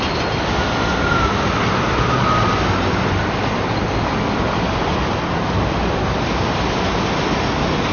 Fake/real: real